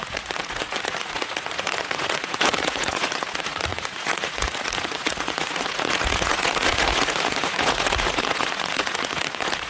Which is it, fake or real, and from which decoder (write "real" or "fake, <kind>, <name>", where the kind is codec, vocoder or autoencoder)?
fake, vocoder, Vocos